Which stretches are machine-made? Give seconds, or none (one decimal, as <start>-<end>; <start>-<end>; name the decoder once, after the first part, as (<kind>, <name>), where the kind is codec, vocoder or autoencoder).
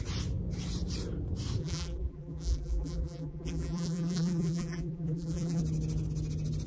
1.6-5.6 (vocoder, BigVGAN v2)